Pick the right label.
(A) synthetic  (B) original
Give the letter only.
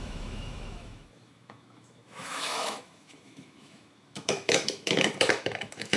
A